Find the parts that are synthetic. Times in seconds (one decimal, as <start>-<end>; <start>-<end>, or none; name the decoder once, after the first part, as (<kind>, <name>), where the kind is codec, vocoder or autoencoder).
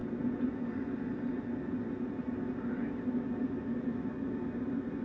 none